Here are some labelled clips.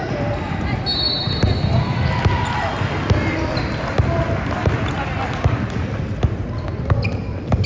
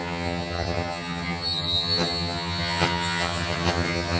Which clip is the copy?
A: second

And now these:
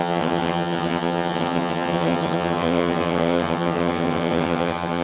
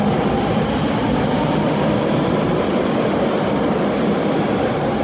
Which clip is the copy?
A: first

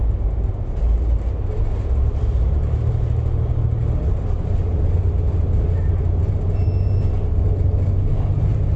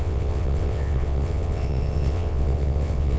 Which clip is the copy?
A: second